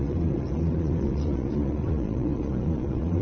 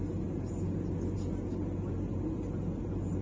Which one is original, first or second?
second